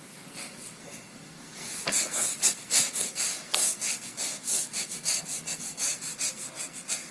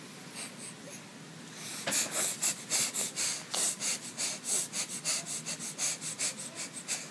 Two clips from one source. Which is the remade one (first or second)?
first